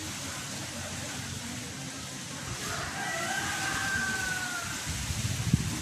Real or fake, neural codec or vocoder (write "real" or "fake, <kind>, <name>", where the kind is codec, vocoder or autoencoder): real